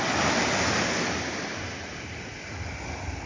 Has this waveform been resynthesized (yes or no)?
no